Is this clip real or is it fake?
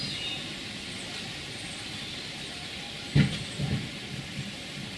real